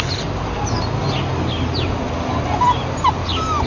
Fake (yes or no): no